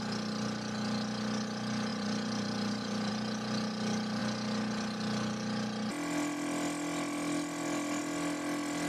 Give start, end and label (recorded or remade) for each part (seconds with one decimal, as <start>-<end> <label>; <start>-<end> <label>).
0.0-1.9 recorded; 1.9-3.1 remade; 3.1-8.9 recorded